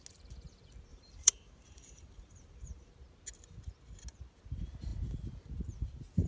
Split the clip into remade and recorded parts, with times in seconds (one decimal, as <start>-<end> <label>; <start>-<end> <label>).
0.0-0.9 recorded; 0.9-2.9 remade; 2.9-6.3 recorded